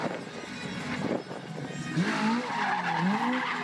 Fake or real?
real